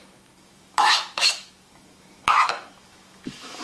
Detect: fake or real fake